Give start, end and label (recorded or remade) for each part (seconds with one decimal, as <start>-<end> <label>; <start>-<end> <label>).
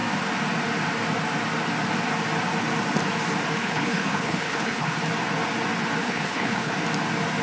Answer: 0.0-3.6 recorded; 3.6-5.0 remade; 5.0-6.0 recorded; 6.0-6.7 remade; 6.7-7.4 recorded